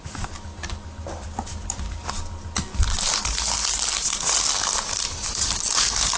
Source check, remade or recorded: recorded